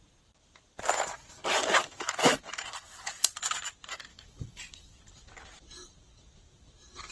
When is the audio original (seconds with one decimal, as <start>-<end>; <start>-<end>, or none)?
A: 0.0-1.8; 2.4-4.1; 4.6-7.1